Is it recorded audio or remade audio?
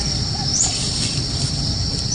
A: recorded